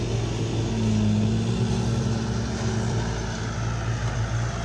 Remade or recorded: recorded